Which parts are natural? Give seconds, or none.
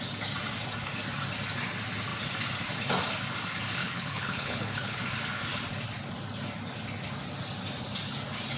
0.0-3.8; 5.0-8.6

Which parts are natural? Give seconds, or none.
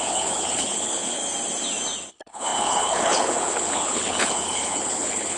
1.2-2.1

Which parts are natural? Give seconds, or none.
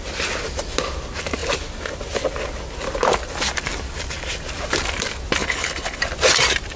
0.0-5.4; 6.0-6.8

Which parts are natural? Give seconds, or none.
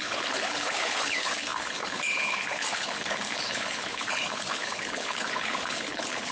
none